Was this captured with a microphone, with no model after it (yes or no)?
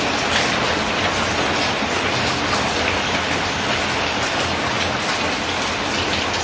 yes